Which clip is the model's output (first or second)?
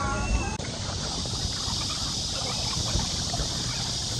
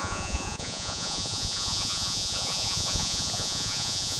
second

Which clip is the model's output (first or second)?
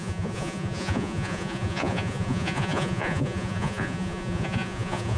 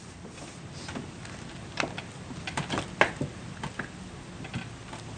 first